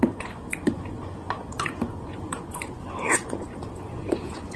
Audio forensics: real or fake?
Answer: fake